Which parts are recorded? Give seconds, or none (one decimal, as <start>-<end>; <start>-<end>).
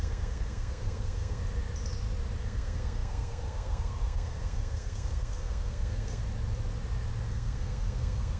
1.4-2.4; 6.2-7.3